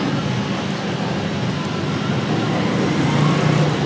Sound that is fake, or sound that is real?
real